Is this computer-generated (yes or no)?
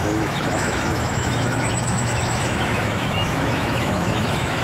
yes